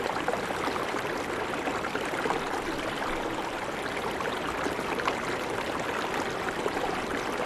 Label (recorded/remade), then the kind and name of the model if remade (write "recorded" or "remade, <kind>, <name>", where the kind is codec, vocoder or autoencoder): recorded